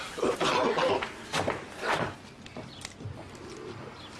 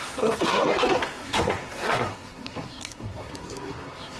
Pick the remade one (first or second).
second